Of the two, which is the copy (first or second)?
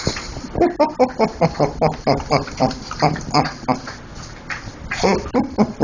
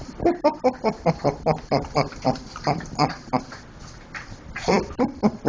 second